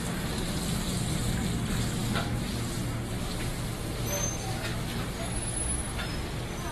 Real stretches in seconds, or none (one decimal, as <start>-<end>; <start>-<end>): 0.0-6.7